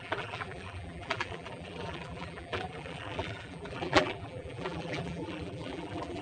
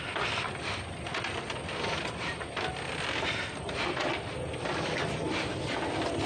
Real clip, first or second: second